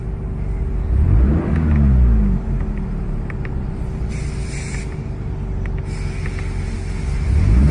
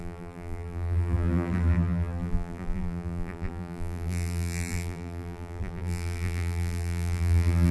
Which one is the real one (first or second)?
first